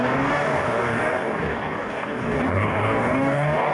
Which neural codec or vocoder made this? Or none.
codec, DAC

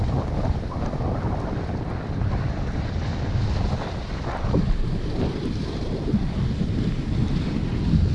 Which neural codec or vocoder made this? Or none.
none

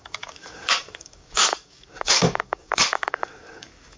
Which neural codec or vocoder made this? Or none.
codec, DAC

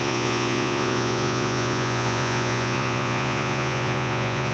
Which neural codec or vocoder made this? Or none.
vocoder, Vocos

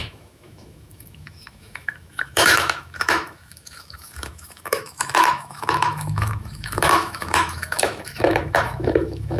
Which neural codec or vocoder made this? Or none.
autoencoder, DAC-VAE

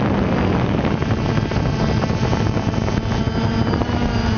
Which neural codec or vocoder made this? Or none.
none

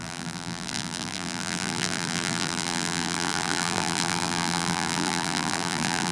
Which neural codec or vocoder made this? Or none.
vocoder, BigVGAN v2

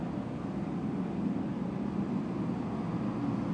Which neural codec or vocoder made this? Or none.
none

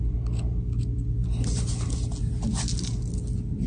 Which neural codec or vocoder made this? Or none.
none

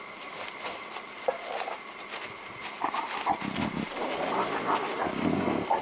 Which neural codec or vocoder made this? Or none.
none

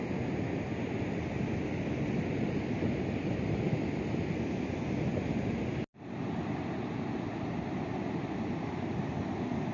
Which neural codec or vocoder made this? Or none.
none